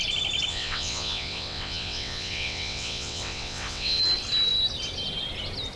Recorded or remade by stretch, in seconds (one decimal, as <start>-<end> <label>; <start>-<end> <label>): 0.0-0.5 recorded; 0.5-4.0 remade; 4.0-5.8 recorded